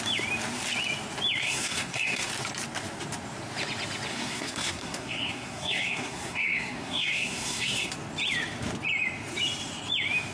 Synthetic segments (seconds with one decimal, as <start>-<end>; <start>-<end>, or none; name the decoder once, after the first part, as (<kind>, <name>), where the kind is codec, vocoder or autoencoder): 1.4-2.3 (codec, SNAC); 4.1-7.9